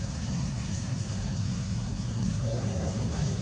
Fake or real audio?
fake